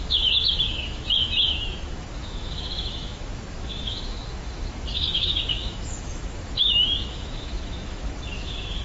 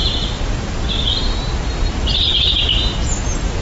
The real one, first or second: second